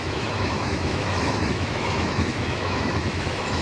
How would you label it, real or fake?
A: fake